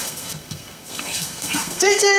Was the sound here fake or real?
fake